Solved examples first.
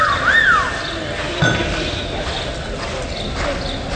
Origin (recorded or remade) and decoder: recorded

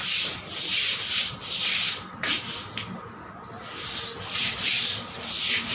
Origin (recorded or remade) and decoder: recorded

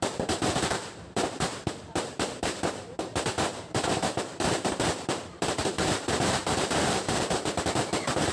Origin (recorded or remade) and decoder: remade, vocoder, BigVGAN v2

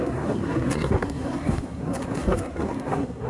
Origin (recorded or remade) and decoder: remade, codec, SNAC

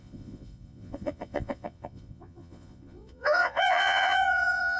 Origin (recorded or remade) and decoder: remade, vocoder, Vocos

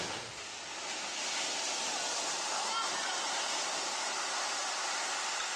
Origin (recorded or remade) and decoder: recorded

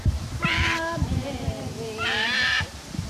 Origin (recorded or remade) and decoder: remade, vocoder, BigVGAN v2